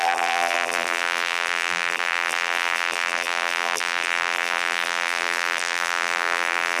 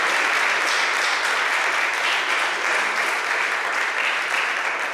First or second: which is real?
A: second